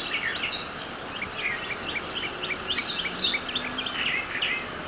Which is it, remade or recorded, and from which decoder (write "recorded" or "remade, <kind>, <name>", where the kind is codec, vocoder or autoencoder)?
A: recorded